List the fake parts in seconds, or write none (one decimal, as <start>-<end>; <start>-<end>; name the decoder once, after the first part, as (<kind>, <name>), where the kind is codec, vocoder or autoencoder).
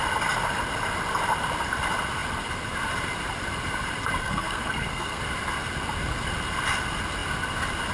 4.2-5.2 (codec, SNAC)